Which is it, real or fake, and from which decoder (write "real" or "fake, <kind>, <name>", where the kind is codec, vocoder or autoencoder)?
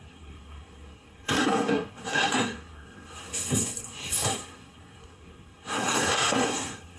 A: fake, codec, SNAC